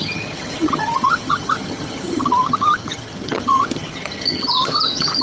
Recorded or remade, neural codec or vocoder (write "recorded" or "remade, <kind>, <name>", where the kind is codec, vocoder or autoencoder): remade, vocoder, HiFi-GAN